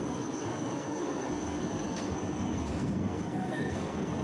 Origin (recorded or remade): remade